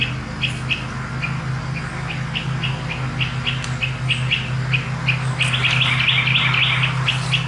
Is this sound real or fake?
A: real